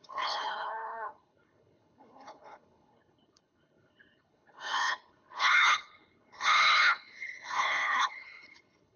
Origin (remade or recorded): remade